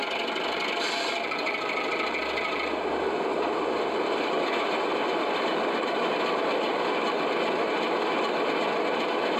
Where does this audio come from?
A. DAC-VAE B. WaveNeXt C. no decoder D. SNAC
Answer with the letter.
C